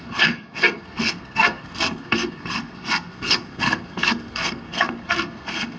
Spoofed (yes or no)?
yes